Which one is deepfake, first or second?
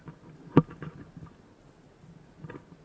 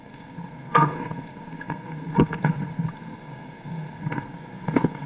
second